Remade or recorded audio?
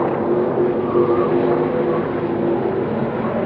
recorded